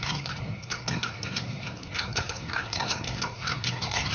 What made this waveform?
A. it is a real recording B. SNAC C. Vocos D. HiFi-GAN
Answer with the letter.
B